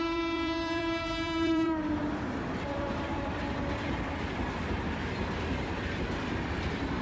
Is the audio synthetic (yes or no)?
yes